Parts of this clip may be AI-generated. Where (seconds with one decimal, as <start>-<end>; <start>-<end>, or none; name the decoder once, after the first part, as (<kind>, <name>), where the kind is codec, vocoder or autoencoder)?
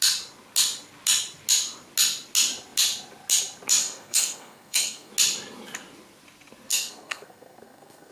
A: 3.8-5.1 (codec, SNAC); 6.7-8.1